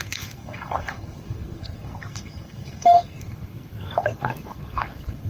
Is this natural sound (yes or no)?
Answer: no